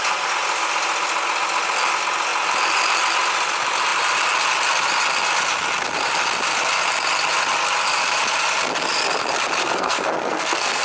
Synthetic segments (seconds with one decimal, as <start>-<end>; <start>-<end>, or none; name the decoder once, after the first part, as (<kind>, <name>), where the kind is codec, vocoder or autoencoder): 9.6-10.8 (codec, SNAC)